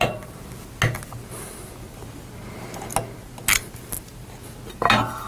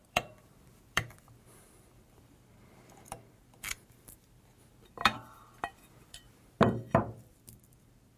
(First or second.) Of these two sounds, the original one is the first